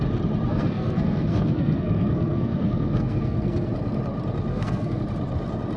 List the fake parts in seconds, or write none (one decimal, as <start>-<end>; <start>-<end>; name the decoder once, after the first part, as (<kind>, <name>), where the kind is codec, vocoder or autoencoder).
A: 0.5-3.7 (codec, SNAC); 4.5-5.0

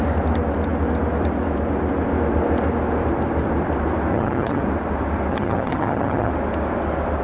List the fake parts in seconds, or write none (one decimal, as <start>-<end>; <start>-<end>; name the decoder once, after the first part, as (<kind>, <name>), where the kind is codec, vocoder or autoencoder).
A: 4.1-4.6 (vocoder, HiFi-GAN); 5.3-6.3

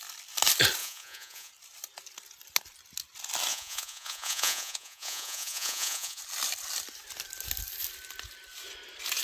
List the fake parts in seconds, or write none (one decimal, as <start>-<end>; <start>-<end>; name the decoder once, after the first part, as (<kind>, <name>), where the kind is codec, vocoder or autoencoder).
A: 0.8-1.5 (vocoder, Vocos); 3.5-6.2

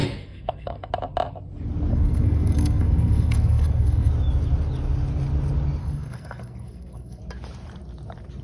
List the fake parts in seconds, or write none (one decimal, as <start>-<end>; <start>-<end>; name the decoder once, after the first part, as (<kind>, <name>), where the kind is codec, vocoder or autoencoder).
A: 0.0-0.9 (codec, SNAC); 1.9-4.1; 5.8-7.2

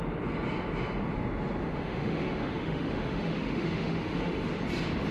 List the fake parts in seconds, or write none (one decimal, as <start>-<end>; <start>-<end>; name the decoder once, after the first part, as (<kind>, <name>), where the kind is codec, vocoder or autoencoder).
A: 1.6-4.5 (autoencoder, DAC-VAE)

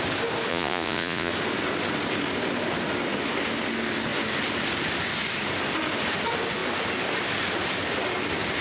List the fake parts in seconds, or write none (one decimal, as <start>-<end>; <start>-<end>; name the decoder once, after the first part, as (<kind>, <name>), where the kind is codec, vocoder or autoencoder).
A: 0.5-1.3 (vocoder, Vocos)

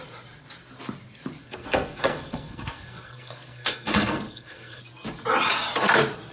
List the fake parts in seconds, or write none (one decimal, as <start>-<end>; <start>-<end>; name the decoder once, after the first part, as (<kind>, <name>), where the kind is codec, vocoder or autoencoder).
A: 1.4-4.8 (codec, SNAC)